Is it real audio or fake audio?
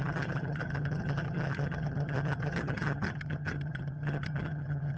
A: fake